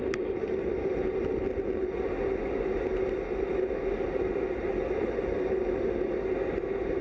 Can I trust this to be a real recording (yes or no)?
yes